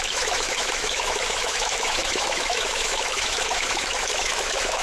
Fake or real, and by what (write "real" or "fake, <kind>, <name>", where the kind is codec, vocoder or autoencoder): fake, autoencoder, DAC-VAE